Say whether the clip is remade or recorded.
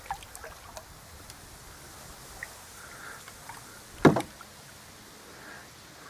recorded